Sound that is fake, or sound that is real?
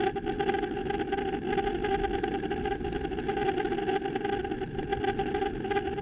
real